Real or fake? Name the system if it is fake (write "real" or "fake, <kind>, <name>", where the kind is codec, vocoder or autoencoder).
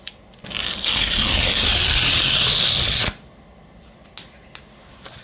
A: real